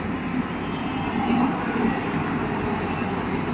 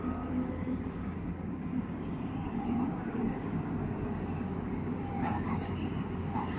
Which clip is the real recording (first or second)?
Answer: first